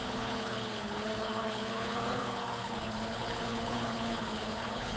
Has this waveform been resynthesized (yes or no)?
yes